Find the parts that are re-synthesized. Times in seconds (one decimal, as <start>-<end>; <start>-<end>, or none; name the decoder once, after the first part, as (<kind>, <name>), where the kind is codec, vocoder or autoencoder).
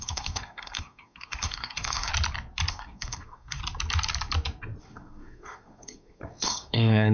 0.0-2.1 (codec, SNAC); 2.7-3.6; 4.8-7.1